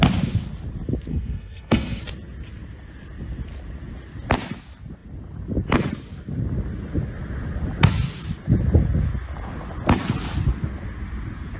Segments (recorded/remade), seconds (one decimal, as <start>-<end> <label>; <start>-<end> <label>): 0.0-1.1 recorded; 1.1-2.0 remade; 2.0-11.6 recorded